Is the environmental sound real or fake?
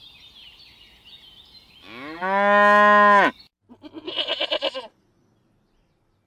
real